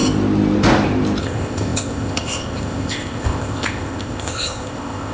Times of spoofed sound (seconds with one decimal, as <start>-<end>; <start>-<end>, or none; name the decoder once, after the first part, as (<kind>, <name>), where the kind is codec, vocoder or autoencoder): 1.2-5.1 (codec, ZipCodec)